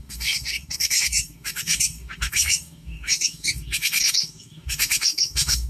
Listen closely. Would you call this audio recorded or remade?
remade